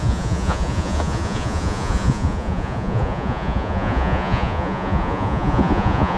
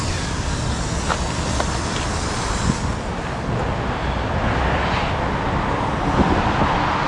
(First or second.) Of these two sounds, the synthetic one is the first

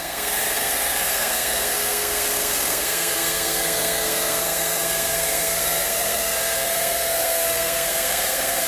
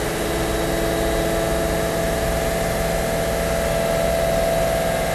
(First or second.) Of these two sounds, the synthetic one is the first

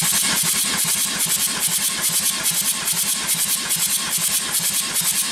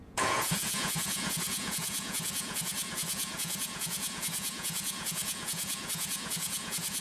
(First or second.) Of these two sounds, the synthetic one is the second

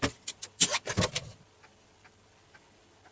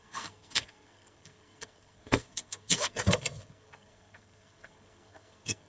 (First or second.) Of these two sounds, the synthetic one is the second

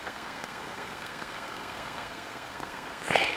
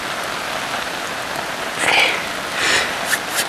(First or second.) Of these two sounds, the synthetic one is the first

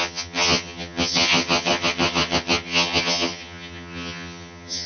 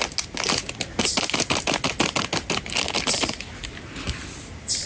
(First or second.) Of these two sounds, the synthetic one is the first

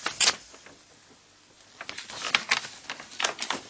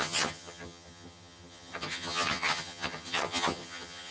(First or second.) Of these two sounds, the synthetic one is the second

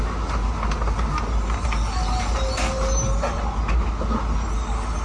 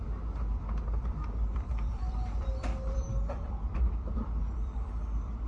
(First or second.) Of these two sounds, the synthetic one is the second